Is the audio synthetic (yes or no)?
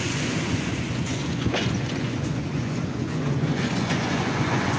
yes